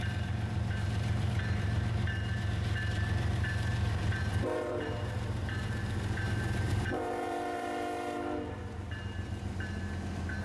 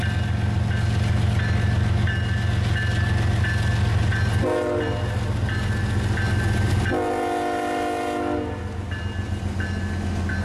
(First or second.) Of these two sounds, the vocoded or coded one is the first